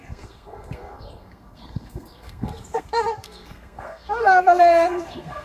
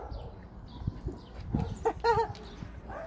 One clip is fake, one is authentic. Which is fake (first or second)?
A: first